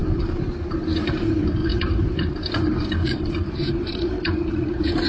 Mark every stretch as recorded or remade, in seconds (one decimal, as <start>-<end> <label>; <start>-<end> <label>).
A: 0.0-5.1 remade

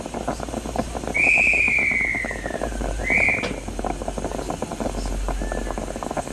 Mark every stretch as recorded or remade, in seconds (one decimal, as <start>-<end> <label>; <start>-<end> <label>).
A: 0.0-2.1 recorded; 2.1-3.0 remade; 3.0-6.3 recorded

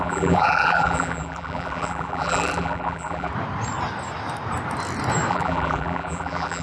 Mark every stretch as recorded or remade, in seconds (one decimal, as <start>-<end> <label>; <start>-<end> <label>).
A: 0.0-3.3 remade; 3.3-5.3 recorded; 5.3-6.6 remade